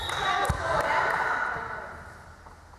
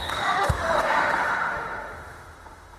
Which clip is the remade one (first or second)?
second